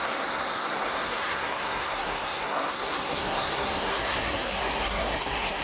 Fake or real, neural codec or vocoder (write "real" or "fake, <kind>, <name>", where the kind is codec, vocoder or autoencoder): fake, codec, SNAC